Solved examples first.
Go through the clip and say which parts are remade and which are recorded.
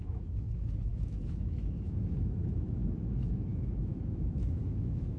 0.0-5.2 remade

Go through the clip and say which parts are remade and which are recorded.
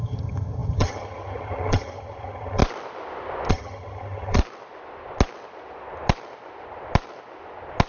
0.0-2.6 remade; 2.6-3.5 recorded; 3.5-4.4 remade; 4.4-7.9 recorded